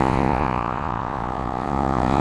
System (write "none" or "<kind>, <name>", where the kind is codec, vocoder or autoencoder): vocoder, Vocos